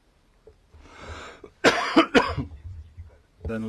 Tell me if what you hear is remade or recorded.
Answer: remade